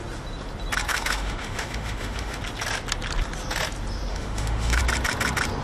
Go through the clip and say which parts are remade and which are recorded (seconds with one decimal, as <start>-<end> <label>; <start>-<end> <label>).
0.0-0.9 recorded; 0.9-2.4 remade; 2.4-4.1 recorded; 4.1-4.8 remade; 4.8-5.6 recorded